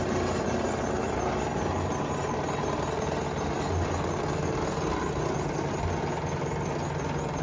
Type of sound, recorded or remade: recorded